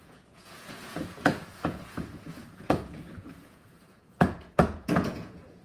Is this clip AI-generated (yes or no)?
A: yes